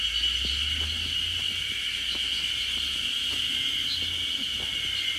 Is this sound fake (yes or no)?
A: no